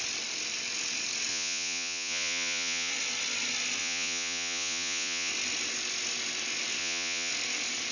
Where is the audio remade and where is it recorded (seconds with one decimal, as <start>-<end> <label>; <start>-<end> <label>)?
0.0-1.3 recorded; 1.3-2.9 remade; 2.9-3.8 recorded; 3.8-5.3 remade; 5.3-6.8 recorded; 6.8-7.3 remade; 7.3-7.9 recorded